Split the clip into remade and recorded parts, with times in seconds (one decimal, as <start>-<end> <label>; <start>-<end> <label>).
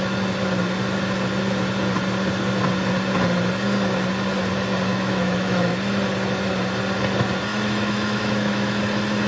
0.0-4.9 recorded; 4.9-5.7 remade; 5.7-7.5 recorded; 7.5-8.8 remade; 8.8-9.3 recorded